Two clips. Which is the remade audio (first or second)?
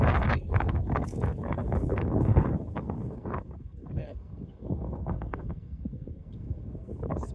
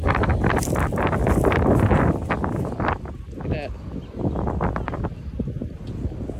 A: first